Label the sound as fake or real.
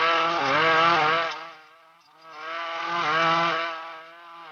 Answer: real